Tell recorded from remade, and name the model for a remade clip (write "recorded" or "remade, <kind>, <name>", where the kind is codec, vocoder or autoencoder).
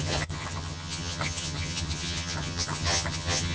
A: remade, vocoder, HiFi-GAN